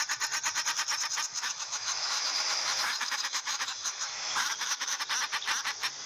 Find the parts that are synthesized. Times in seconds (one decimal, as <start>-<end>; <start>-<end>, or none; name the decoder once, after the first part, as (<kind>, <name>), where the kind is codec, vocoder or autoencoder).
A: 1.3-5.0 (autoencoder, DAC-VAE)